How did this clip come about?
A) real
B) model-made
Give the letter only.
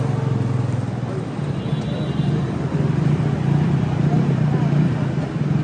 A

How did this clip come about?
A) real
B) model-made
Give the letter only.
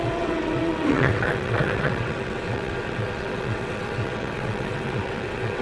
B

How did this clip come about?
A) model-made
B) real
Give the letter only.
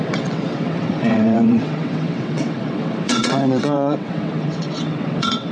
A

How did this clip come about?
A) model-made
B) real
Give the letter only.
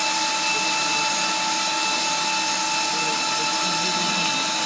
B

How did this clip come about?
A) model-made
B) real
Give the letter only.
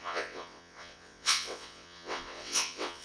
A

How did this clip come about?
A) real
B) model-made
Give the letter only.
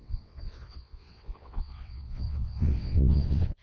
B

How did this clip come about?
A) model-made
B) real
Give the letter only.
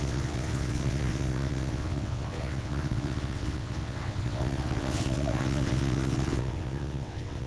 A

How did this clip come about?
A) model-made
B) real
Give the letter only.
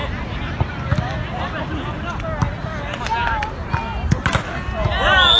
B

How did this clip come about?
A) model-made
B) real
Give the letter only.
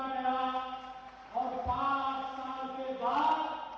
B